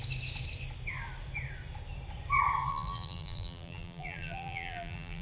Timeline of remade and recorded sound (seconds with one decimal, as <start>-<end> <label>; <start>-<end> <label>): 0.0-2.7 recorded; 2.7-5.2 remade